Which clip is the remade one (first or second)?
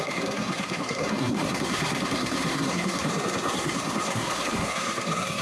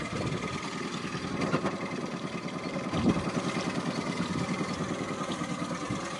first